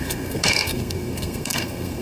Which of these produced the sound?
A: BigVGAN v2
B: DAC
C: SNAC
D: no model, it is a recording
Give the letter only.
C